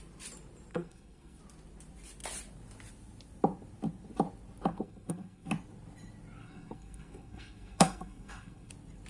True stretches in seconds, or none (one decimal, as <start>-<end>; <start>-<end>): 0.0-0.7; 1.4-4.7; 5.5-6.4; 8.7-9.1